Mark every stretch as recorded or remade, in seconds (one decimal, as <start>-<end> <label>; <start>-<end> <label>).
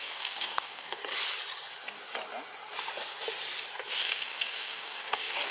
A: 0.0-1.0 remade; 1.0-3.9 recorded; 3.9-5.5 remade